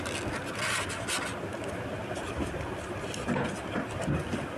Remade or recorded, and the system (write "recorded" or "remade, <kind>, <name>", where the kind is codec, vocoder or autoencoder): recorded